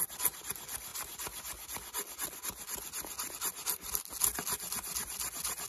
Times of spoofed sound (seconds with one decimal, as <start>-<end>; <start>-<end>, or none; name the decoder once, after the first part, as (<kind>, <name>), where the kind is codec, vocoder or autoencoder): none